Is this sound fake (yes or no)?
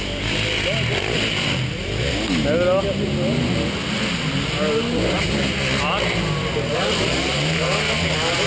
no